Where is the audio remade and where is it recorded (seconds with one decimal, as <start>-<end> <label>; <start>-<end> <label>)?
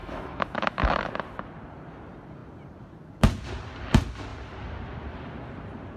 0.0-1.1 remade; 1.1-6.0 recorded